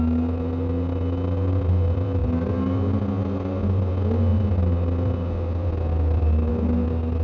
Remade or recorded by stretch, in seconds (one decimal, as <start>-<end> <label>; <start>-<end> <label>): 0.0-7.2 recorded

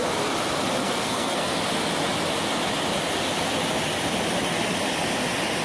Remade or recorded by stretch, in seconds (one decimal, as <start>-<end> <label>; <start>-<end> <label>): 0.0-0.8 recorded; 0.8-1.6 remade; 1.6-5.6 recorded